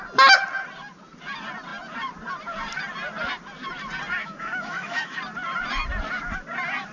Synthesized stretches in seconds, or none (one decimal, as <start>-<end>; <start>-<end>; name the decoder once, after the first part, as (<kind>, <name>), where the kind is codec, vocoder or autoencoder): 4.2-5.2 (autoencoder, DAC-VAE)